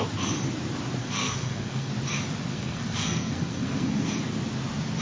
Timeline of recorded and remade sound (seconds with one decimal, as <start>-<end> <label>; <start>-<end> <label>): 0.0-1.0 recorded; 1.0-1.9 remade; 1.9-2.5 recorded; 2.5-4.1 remade; 4.1-5.0 recorded

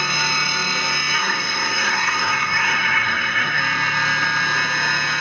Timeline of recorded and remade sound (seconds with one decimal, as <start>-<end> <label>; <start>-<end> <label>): 0.0-1.2 recorded; 1.2-3.6 remade; 3.6-5.2 recorded

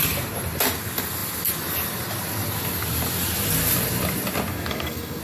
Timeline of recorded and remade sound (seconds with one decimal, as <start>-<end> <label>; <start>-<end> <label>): 0.0-4.5 recorded; 4.5-5.2 remade

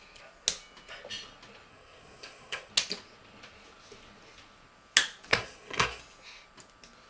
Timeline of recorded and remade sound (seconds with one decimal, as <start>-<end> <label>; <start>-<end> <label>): 0.0-1.7 recorded; 1.7-2.7 remade; 2.7-5.3 recorded; 5.3-6.0 remade; 6.0-7.1 recorded

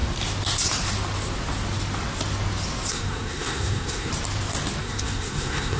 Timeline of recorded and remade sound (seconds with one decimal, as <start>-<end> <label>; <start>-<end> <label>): 0.0-2.9 recorded; 2.9-4.1 remade; 4.1-4.8 recorded; 4.8-5.8 remade

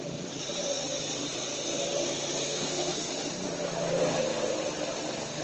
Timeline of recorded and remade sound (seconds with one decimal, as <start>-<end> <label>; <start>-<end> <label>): 0.0-2.4 recorded; 2.4-3.1 remade; 3.1-5.4 recorded

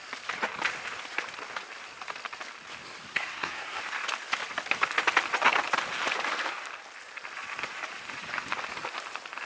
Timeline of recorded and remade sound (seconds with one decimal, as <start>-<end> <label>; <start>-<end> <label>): 0.0-3.1 recorded; 3.1-3.8 remade; 3.8-9.5 recorded